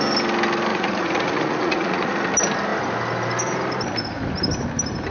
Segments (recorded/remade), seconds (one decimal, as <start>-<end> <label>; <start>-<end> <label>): 0.0-0.7 recorded; 0.7-2.1 remade; 2.1-5.1 recorded